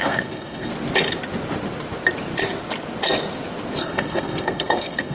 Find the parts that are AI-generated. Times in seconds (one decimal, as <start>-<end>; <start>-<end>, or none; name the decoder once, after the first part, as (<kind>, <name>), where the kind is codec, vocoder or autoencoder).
0.0-0.7 (codec, SNAC); 3.8-5.1